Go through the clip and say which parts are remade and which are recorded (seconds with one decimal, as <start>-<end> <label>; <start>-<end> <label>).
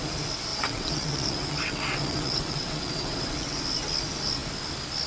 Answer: 0.0-0.5 recorded; 0.5-3.6 remade; 3.6-5.1 recorded